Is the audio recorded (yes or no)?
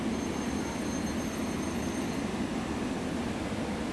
yes